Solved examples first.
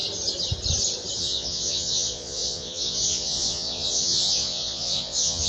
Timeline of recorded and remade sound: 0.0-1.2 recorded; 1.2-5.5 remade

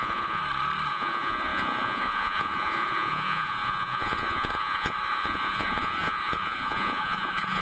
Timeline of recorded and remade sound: 0.0-0.4 remade; 0.4-0.9 recorded; 0.9-7.6 remade

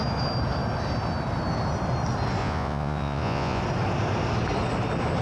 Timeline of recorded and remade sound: 0.0-2.4 recorded; 2.4-3.6 remade; 3.6-5.2 recorded

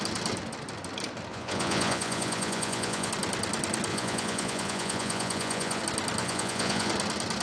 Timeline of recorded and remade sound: 0.0-1.3 recorded; 1.3-3.1 remade; 3.1-3.9 recorded; 3.9-5.8 remade; 5.8-6.2 recorded; 6.2-6.9 remade; 6.9-7.4 recorded

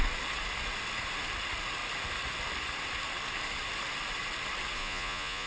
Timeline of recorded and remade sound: 0.0-4.8 recorded; 4.8-5.5 remade